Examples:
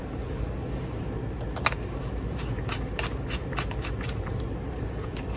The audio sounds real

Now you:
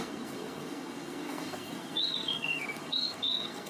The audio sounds fake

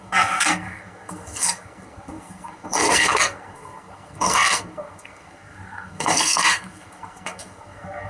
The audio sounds fake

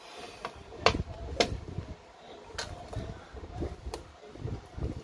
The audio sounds real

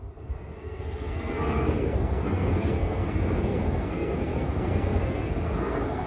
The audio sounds fake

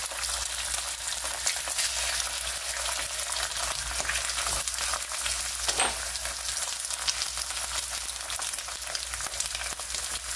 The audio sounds real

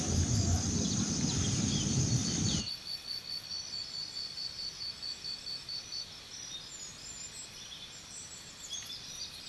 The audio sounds real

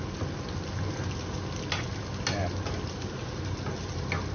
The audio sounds real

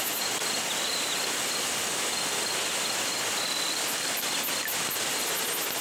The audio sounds real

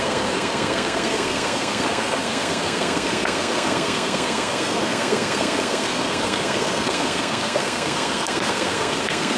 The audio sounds fake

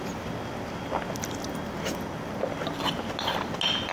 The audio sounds real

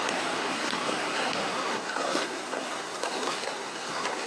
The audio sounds fake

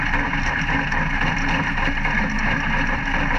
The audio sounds real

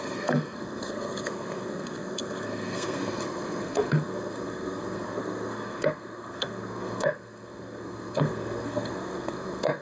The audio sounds fake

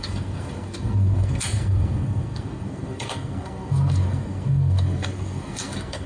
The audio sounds fake